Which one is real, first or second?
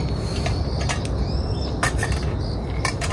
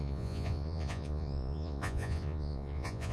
first